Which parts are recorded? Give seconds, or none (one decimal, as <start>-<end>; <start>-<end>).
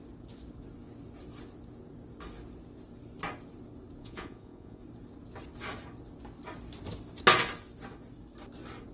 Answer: 0.0-4.0; 4.8-8.9